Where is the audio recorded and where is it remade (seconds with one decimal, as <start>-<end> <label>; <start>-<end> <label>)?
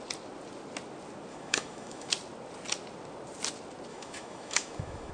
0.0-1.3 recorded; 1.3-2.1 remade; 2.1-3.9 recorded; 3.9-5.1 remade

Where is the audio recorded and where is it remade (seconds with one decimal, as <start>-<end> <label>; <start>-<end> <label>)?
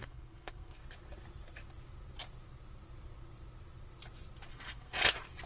0.0-0.8 remade; 0.8-4.5 recorded; 4.5-5.0 remade; 5.0-5.5 recorded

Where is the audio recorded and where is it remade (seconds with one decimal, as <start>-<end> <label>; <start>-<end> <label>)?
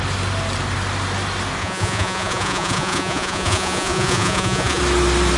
0.0-1.6 recorded; 1.6-4.8 remade; 4.8-5.4 recorded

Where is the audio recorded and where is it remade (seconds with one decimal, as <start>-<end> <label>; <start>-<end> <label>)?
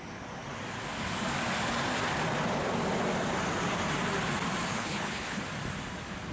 0.0-4.7 recorded; 4.7-5.4 remade; 5.4-6.3 recorded